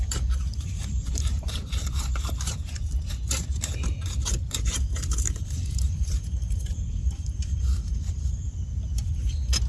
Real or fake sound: fake